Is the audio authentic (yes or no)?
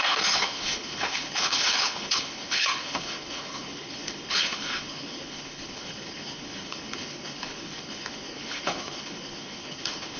no